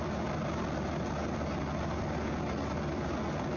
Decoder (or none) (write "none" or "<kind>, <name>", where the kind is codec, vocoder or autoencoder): none